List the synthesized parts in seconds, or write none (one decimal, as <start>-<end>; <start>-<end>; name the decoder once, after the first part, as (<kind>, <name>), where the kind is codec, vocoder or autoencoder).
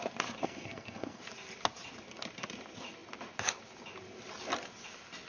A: 0.4-1.2 (codec, SNAC)